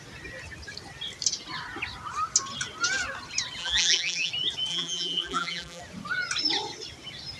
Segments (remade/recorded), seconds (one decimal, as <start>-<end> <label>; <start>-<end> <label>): 0.0-3.6 recorded; 3.6-4.3 remade; 4.3-4.7 recorded; 4.7-5.8 remade; 5.8-7.4 recorded